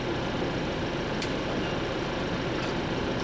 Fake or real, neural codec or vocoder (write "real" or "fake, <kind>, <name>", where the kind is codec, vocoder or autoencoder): real